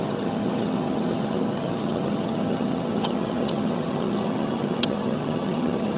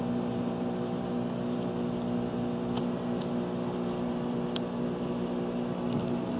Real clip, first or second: second